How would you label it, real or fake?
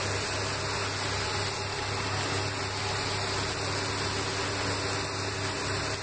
real